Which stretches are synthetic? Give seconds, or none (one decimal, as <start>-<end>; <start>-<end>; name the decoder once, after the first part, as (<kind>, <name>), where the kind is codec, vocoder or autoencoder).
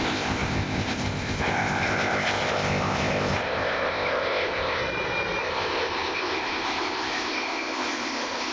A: 0.0-4.8 (codec, ZipCodec); 5.4-8.5